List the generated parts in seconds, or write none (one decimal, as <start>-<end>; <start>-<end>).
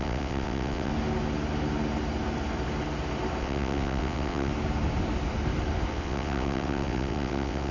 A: 0.0-0.9; 3.4-4.5; 5.9-7.7